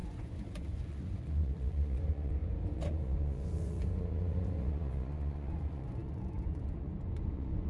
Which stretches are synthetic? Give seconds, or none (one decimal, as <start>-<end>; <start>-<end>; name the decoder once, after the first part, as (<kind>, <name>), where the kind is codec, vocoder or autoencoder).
0.0-7.7 (vocoder, Vocos)